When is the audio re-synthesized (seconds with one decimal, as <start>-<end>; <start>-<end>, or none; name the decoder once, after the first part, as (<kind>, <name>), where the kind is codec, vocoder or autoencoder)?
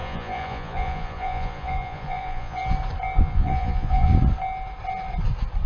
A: 0.0-2.6 (vocoder, Vocos); 3.2-4.1